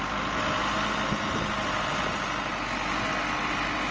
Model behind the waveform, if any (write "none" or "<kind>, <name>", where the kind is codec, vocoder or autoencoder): none